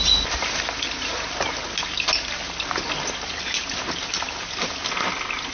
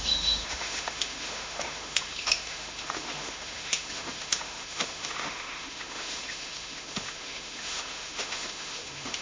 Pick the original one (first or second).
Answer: first